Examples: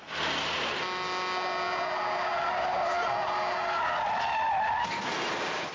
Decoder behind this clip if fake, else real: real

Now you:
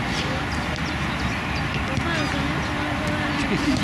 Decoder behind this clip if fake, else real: real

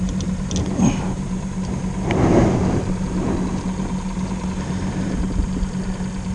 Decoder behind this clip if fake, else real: real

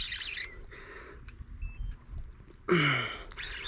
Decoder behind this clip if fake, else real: real